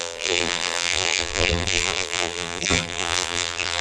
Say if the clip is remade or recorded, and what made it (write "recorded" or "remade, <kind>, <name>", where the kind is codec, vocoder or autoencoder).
remade, vocoder, BigVGAN v2